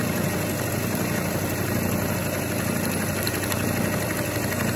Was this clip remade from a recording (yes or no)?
no